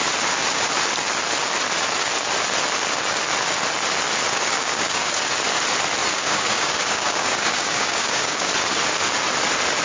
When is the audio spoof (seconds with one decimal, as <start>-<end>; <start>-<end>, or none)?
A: 4.3-5.3; 6.1-8.5